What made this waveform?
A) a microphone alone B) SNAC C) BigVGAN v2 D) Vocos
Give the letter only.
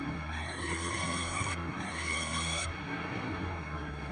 B